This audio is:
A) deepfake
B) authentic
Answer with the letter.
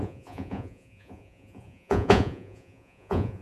A